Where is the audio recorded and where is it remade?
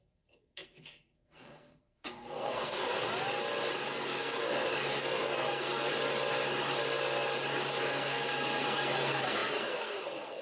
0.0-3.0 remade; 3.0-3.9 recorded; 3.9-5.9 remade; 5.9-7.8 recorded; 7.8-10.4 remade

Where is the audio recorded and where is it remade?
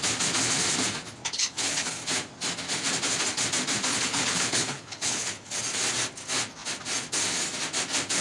0.0-1.2 recorded; 1.2-2.1 remade; 2.1-3.9 recorded; 3.9-5.6 remade; 5.6-8.2 recorded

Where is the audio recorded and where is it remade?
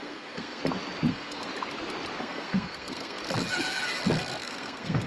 0.0-0.6 remade; 0.6-1.1 recorded; 1.1-1.5 remade; 1.5-2.2 recorded; 2.2-3.2 remade; 3.2-4.4 recorded; 4.4-5.1 remade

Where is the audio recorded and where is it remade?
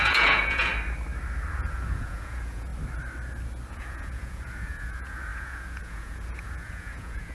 0.0-0.7 remade; 0.7-1.5 recorded; 1.5-2.7 remade; 2.7-3.7 recorded; 3.7-7.3 remade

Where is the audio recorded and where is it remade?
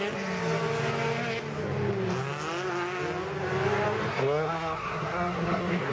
0.0-4.1 recorded; 4.1-5.9 remade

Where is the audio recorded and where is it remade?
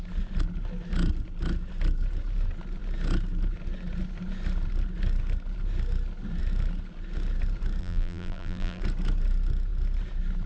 0.0-7.8 recorded; 7.8-8.8 remade; 8.8-10.5 recorded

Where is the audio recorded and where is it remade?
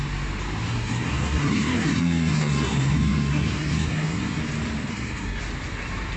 0.0-0.7 recorded; 0.7-4.4 remade; 4.4-4.9 recorded; 4.9-5.4 remade; 5.4-6.2 recorded